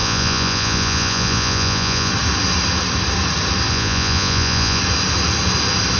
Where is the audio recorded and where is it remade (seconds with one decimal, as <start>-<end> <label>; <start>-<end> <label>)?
0.0-2.1 remade; 2.1-3.7 recorded; 3.7-4.8 remade; 4.8-6.0 recorded

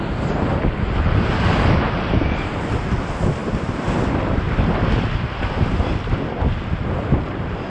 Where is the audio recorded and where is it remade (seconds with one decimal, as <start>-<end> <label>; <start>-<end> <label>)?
0.0-7.7 recorded

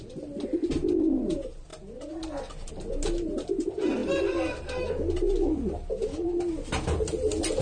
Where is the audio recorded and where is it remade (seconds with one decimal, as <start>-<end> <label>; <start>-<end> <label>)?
0.0-7.6 recorded

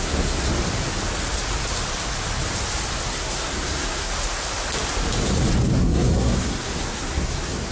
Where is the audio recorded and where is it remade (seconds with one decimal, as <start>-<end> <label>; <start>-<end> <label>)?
0.0-0.5 remade; 0.5-3.1 recorded; 3.1-4.1 remade; 4.1-5.8 recorded; 5.8-7.7 remade

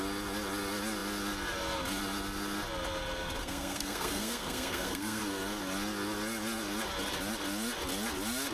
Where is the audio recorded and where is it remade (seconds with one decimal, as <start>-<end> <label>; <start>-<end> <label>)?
0.0-3.4 recorded; 3.4-5.2 remade; 5.2-8.5 recorded

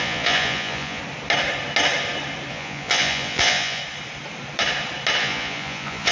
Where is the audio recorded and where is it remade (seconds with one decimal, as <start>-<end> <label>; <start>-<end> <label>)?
0.0-1.0 remade; 1.0-2.5 recorded; 2.5-3.8 remade; 3.8-5.2 recorded; 5.2-6.1 remade